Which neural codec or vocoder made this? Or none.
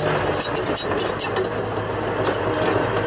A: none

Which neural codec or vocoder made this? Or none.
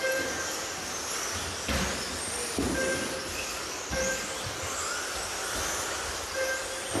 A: none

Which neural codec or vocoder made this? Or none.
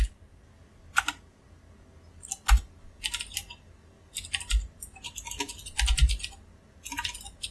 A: none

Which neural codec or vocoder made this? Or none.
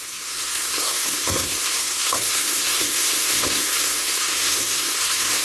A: codec, SNAC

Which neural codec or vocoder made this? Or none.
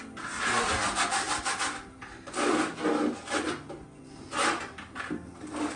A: none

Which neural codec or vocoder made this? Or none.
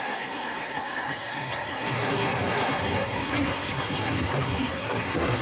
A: codec, SNAC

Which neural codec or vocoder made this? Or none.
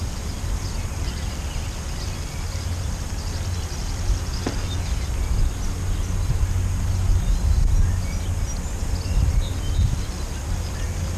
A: none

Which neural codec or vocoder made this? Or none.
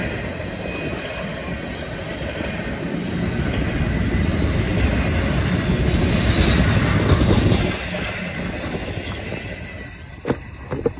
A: none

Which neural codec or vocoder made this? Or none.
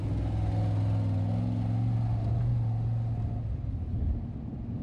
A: none